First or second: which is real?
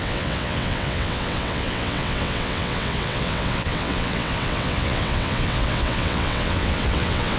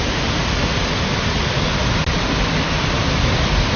second